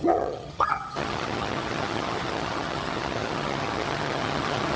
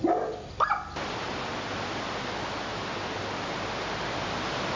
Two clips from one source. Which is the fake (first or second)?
first